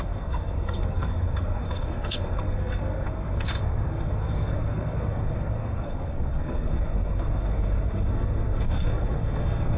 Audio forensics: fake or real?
fake